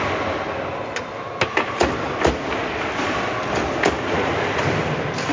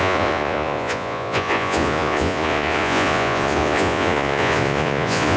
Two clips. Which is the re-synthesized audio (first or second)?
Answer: second